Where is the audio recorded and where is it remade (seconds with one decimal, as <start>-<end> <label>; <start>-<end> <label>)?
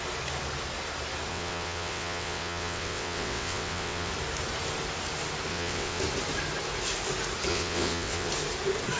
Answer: 0.0-1.3 recorded; 1.3-4.1 remade; 4.1-5.5 recorded; 5.5-6.0 remade; 6.0-7.5 recorded; 7.5-8.3 remade; 8.3-9.0 recorded